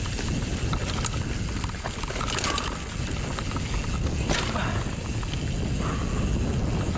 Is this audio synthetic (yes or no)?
no